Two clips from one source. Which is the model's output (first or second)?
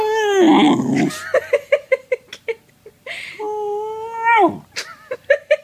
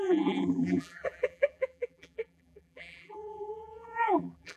second